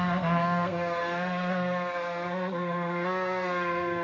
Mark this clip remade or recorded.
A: remade